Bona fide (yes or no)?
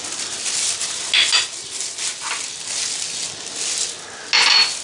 yes